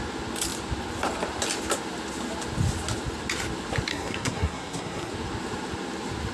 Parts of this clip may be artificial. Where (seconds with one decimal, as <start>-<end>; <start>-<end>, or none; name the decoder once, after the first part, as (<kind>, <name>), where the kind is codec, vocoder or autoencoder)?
3.9-5.1 (codec, SNAC)